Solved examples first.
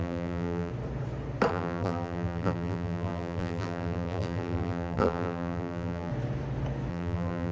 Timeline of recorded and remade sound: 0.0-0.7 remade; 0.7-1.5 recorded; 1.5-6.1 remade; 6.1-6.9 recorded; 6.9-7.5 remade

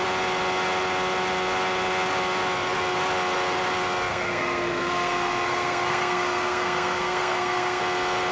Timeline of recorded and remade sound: 0.0-4.1 recorded; 4.1-7.8 remade; 7.8-8.3 recorded

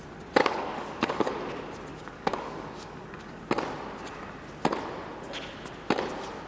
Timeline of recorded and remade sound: 0.0-0.4 recorded; 0.4-1.3 remade; 1.3-1.9 recorded; 1.9-3.4 remade; 3.4-6.5 recorded

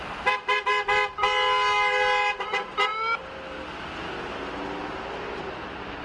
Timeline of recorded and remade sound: 0.0-6.0 recorded

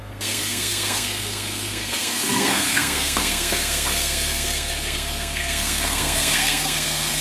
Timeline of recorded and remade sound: 0.0-7.2 remade